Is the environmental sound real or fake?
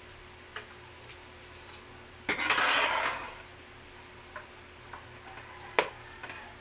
real